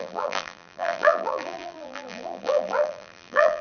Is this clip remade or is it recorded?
remade